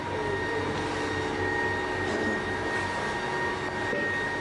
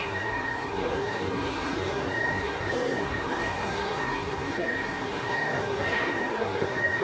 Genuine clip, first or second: first